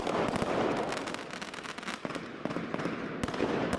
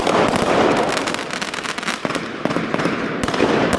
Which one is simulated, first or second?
second